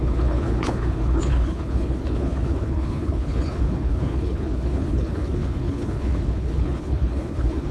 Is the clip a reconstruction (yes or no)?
yes